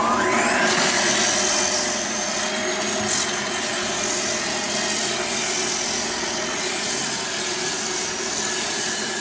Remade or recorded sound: recorded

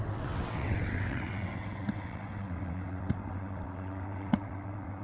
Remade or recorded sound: remade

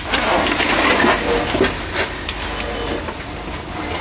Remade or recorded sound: recorded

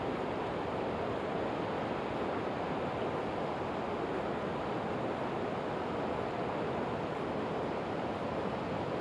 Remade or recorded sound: recorded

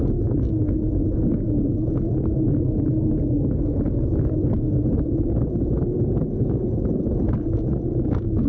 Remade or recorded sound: recorded